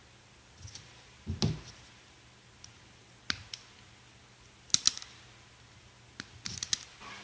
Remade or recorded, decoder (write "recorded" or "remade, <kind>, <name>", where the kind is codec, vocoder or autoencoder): recorded